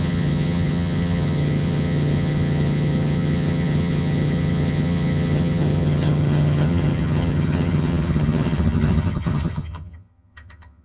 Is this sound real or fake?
fake